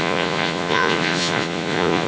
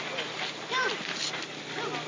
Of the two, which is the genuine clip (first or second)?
second